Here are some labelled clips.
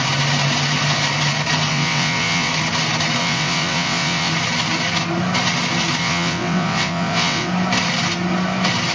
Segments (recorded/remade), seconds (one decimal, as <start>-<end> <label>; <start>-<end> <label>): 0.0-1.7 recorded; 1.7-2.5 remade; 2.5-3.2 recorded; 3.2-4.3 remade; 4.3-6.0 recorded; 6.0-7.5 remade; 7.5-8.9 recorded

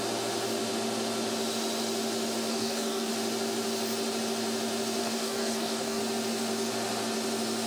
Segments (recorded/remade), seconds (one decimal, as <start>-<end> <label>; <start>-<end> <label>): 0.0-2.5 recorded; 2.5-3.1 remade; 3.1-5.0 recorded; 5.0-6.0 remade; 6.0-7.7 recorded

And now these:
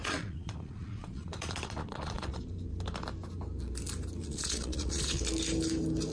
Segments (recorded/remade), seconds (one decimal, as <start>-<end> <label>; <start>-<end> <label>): 0.0-2.4 remade; 2.4-4.2 recorded; 4.2-5.2 remade; 5.2-6.1 recorded

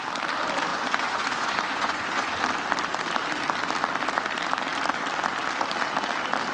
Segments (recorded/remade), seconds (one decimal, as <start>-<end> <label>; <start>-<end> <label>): 0.0-0.7 recorded; 0.7-2.3 remade; 2.3-6.5 recorded

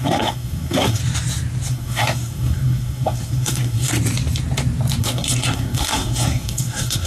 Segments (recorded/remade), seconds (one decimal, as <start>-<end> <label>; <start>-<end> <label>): 0.0-1.0 remade; 1.0-1.7 recorded; 1.7-3.9 remade; 3.9-5.0 recorded; 5.0-7.1 remade